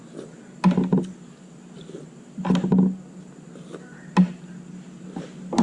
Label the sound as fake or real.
real